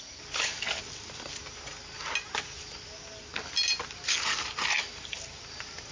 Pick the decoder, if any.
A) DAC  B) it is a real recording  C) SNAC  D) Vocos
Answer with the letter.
B